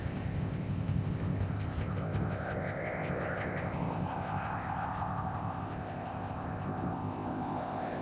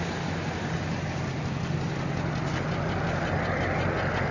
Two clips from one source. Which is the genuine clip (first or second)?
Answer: second